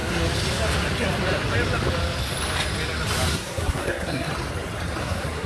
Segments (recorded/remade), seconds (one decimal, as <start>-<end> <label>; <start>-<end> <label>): 0.0-3.3 recorded; 3.3-4.3 remade; 4.3-5.0 recorded; 5.0-5.5 remade